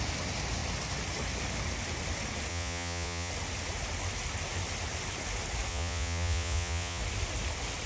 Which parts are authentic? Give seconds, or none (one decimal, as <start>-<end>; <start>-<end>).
0.0-2.5; 3.3-5.7; 7.0-7.9